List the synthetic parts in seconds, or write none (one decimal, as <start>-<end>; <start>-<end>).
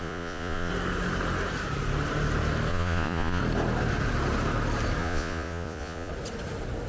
0.0-0.7; 2.7-3.4; 5.0-6.1